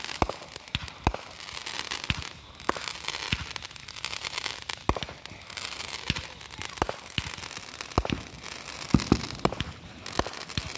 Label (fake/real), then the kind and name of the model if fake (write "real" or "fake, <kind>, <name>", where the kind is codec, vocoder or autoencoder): real